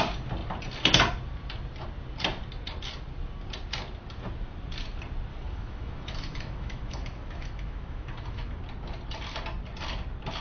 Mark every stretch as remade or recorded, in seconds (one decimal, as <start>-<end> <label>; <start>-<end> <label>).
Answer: 0.0-5.3 recorded; 5.3-8.6 remade; 8.6-10.4 recorded

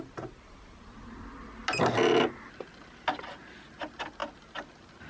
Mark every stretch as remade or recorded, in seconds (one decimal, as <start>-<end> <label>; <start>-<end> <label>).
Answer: 0.0-5.1 recorded

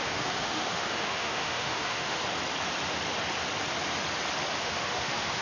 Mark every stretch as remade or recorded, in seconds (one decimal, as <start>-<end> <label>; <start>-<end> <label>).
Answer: 0.0-2.2 remade; 2.2-4.6 recorded; 4.6-5.4 remade

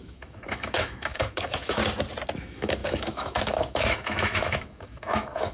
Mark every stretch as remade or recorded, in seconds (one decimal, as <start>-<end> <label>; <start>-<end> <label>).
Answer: 0.0-1.8 remade; 1.8-2.4 recorded; 2.4-5.5 remade

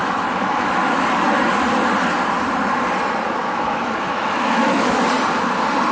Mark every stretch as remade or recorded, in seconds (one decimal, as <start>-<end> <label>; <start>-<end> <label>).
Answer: 0.0-1.0 remade; 1.0-3.4 recorded; 3.4-5.0 remade; 5.0-5.9 recorded

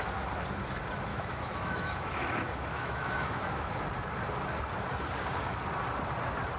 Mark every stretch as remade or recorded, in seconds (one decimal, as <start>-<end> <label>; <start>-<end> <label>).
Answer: 0.0-1.1 recorded; 1.1-3.7 remade; 3.7-6.6 recorded